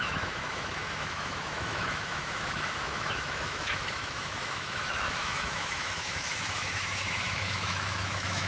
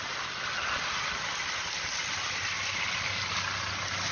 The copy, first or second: first